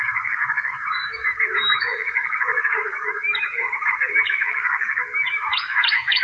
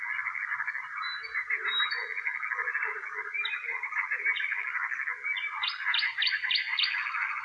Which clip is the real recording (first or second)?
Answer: second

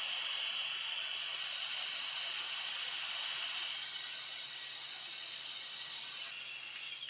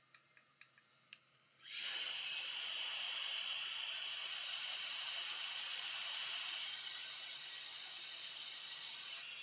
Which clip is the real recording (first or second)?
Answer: first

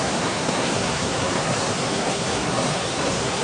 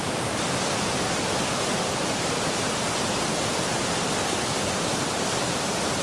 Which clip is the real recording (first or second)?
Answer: second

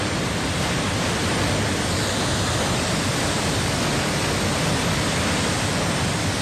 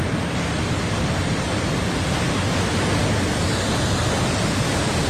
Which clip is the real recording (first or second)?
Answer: second